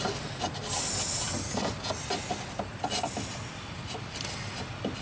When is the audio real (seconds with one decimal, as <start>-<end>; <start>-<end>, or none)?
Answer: 0.0-5.0